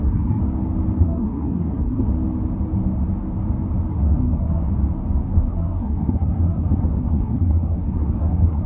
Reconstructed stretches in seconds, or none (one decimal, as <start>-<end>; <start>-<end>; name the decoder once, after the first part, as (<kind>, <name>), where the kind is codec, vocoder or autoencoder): 0.0-0.4 (codec, SNAC); 1.0-2.1; 3.9-4.7; 5.4-8.7